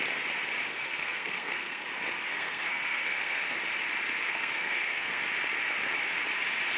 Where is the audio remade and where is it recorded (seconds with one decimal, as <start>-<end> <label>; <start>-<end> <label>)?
0.0-0.7 recorded; 0.7-1.8 remade; 1.8-2.3 recorded; 2.3-3.6 remade; 3.6-4.2 recorded; 4.2-5.2 remade; 5.2-6.8 recorded